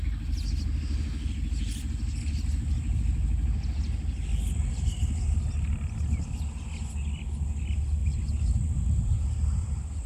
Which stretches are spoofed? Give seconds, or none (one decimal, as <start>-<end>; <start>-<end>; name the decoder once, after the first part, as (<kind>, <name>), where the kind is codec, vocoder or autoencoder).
none